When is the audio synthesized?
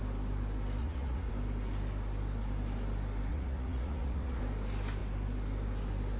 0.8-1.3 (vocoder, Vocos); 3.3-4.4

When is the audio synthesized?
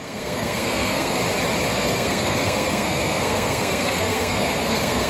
0.0-1.2 (codec, SNAC); 1.7-5.1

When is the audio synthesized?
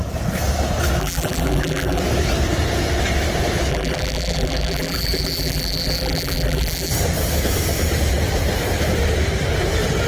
1.0-2.0 (vocoder, BigVGAN v2); 3.7-6.9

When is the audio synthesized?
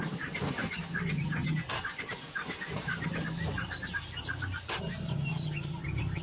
1.7-4.2 (vocoder, BigVGAN v2)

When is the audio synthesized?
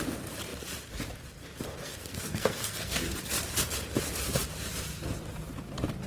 1.8-3.2 (codec, SNAC)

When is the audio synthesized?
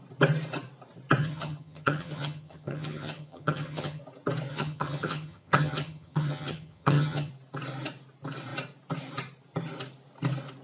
1.2-4.0 (vocoder, HiFi-GAN); 4.5-7.3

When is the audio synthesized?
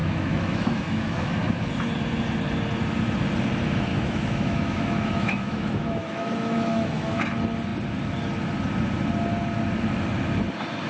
0.0-1.7 (autoencoder, DAC-VAE); 3.9-7.2